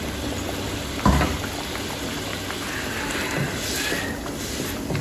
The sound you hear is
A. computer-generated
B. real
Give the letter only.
B